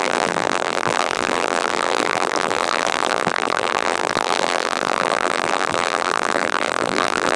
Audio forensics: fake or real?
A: fake